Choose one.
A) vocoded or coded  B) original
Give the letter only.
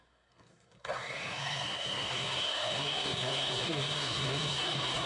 A